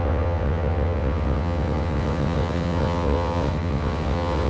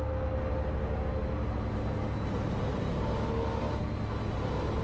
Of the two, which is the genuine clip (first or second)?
second